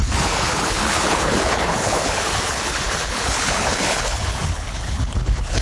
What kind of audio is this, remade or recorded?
remade